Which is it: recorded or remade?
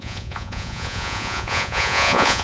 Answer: remade